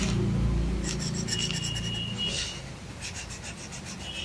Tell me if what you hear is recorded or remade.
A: recorded